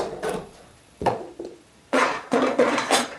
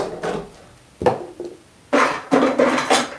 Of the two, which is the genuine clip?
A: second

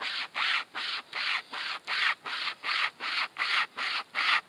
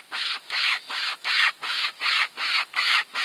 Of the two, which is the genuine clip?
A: first